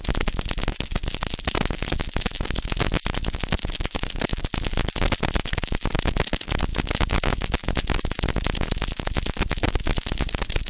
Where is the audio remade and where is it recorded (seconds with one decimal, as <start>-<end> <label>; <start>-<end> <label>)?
0.0-10.7 recorded